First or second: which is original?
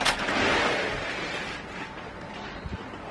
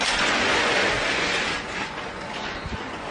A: first